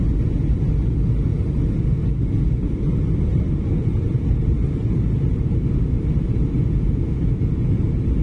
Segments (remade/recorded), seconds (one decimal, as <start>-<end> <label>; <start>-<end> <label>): 0.0-3.3 recorded; 3.3-6.6 remade; 6.6-8.2 recorded